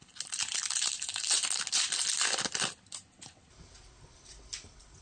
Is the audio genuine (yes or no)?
yes